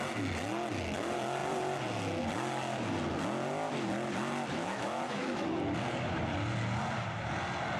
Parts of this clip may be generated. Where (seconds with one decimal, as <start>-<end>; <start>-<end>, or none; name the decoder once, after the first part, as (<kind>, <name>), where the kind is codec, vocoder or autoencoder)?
4.6-5.6 (autoencoder, DAC-VAE)